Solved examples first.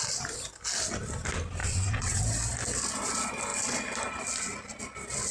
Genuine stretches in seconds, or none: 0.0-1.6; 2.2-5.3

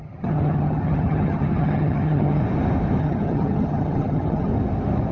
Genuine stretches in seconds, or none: 2.4-3.0; 4.5-5.1

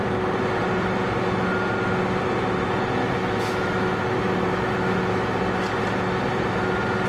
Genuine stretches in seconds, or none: 0.0-3.0; 5.4-7.1

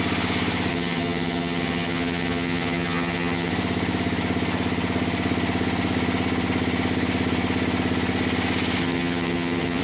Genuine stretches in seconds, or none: 0.0-0.7; 3.5-8.8

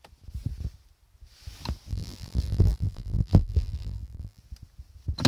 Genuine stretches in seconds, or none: 0.0-1.9; 4.4-5.3